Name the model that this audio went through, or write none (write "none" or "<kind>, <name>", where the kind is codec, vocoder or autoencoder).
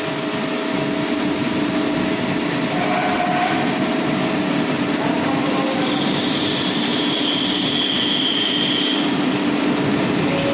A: none